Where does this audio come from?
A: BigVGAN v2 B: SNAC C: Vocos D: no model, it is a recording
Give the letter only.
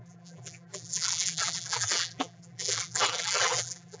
A